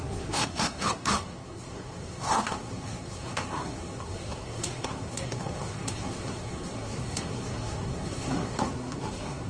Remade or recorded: remade